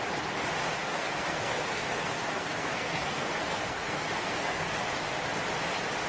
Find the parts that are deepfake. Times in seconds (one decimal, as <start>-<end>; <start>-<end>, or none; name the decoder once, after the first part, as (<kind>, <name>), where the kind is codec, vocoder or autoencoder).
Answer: 0.9-4.6 (codec, SNAC)